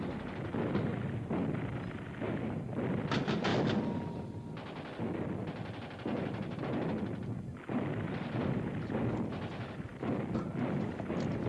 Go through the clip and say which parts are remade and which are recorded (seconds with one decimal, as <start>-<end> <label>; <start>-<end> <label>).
0.0-11.5 recorded